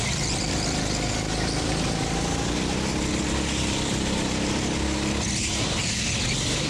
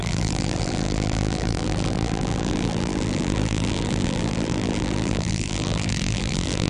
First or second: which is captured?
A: first